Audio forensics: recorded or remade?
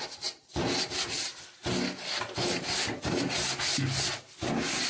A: recorded